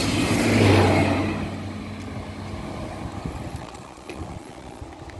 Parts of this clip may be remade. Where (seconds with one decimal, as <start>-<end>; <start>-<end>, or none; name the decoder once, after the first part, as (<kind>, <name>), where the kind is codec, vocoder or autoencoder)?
3.6-4.8 (vocoder, Vocos)